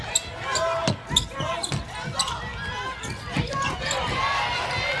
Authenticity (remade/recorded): recorded